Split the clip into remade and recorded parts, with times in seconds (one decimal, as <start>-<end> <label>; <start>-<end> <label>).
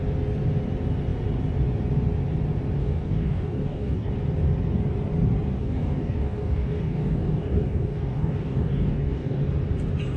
0.0-2.8 recorded; 2.8-4.1 remade; 4.1-5.6 recorded; 5.6-9.4 remade; 9.4-10.2 recorded